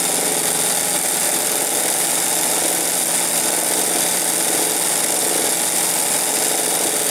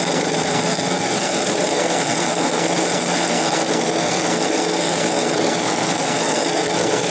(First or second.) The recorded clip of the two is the first